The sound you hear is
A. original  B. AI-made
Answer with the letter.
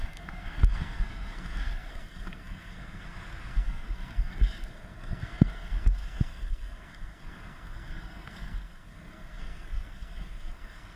B